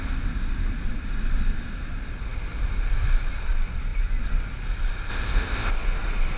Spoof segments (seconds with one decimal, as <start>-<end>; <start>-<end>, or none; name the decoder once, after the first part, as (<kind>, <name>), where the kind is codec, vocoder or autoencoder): 5.1-5.7 (codec, ZipCodec)